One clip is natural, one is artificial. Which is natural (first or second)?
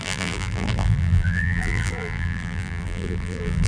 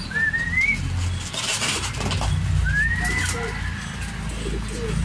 second